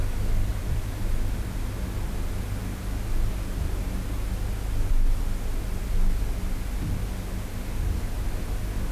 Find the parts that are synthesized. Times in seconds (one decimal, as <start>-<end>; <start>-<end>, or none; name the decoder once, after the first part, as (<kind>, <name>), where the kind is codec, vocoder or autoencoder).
0.5-2.3 (vocoder, BigVGAN v2)